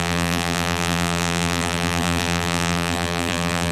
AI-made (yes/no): yes